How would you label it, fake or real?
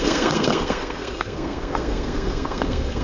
fake